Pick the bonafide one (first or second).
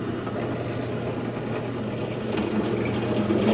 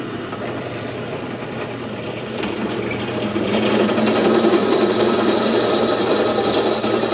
first